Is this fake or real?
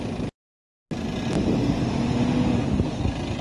real